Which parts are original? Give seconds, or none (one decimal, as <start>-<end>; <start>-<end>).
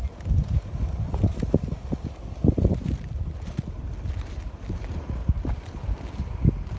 0.0-6.8